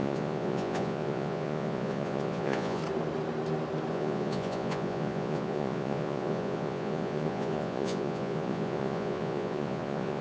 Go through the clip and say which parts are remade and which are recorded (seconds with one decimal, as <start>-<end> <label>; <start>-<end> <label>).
0.0-2.8 remade; 2.8-3.9 recorded; 3.9-10.2 remade